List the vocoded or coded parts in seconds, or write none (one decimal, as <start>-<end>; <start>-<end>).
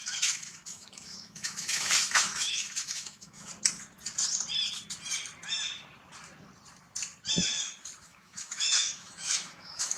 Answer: 0.0-3.5; 8.0-10.0